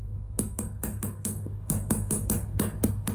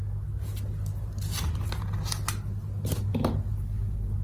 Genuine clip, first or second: second